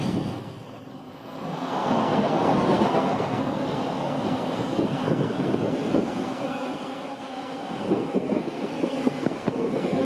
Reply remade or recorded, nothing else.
remade